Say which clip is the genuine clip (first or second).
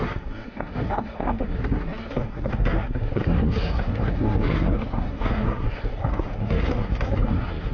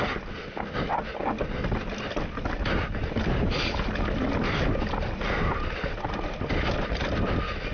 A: second